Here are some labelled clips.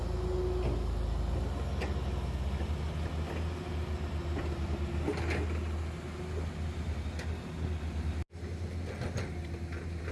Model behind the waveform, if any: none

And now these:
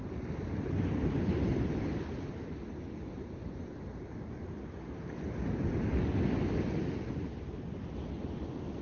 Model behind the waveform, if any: none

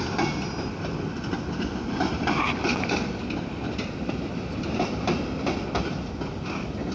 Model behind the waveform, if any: none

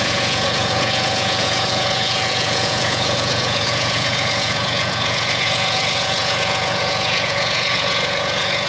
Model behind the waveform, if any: vocoder, Vocos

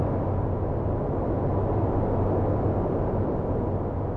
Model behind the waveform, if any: none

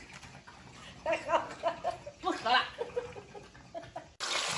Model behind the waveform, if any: none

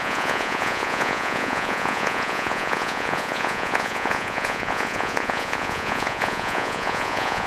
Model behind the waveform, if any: vocoder, Vocos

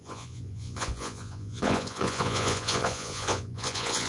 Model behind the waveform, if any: vocoder, Vocos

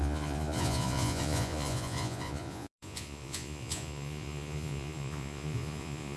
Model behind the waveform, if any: vocoder, Vocos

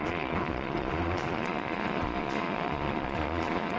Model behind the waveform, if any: vocoder, Vocos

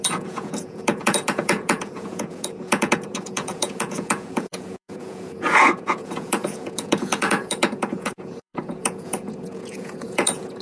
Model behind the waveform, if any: vocoder, Vocos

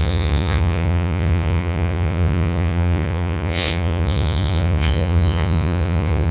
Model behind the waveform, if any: vocoder, Vocos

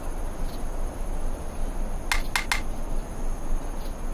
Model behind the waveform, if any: none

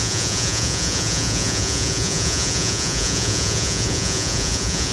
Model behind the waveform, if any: vocoder, Vocos